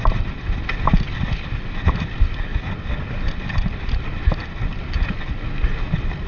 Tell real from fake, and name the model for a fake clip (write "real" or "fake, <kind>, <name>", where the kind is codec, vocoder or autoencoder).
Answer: real